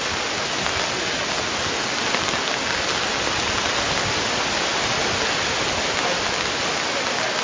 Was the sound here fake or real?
real